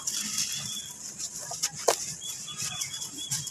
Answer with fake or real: real